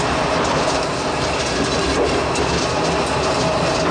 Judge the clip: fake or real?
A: real